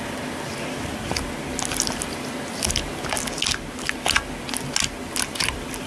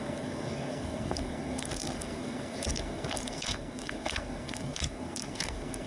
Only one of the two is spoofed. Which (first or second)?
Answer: second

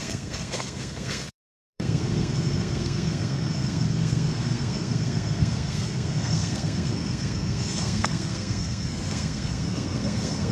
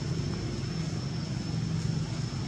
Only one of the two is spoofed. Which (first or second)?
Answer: first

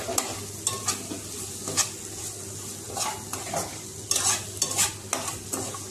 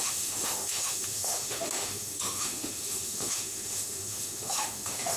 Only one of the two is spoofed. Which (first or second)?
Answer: second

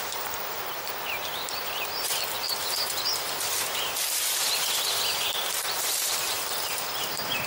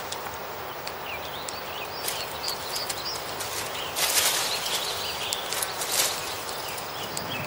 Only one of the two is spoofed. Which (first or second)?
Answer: first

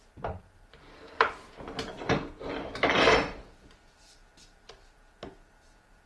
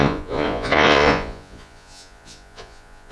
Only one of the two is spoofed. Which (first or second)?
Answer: second